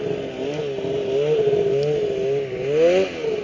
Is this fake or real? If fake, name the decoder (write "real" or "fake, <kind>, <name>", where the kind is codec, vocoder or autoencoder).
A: real